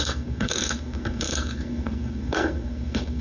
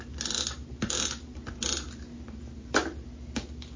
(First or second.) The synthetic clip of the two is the first